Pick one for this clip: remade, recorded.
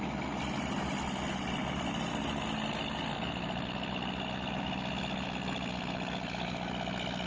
recorded